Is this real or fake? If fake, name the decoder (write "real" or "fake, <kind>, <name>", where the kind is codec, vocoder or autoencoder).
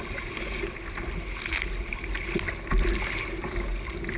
real